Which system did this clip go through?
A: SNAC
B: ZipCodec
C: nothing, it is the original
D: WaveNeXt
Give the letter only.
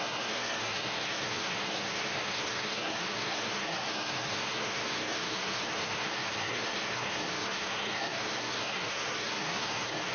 A